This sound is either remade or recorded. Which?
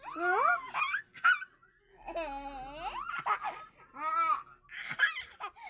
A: recorded